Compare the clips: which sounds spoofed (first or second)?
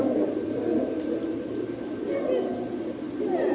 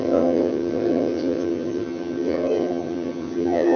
second